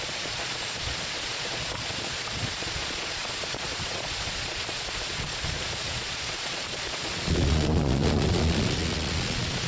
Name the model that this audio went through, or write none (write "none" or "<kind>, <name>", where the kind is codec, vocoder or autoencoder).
vocoder, Vocos